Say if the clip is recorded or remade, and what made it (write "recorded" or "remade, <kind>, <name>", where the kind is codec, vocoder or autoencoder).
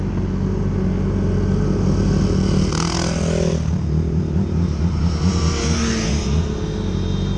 recorded